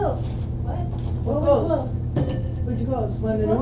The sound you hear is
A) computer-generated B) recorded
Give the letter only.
B